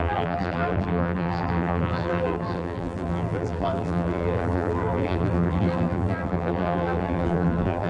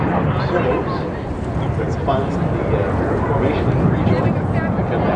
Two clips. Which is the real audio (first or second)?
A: second